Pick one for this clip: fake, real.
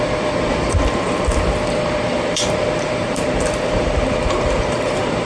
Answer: fake